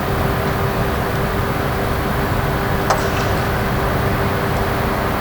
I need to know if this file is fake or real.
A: real